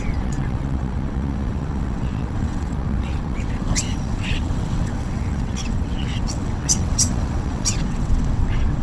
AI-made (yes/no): yes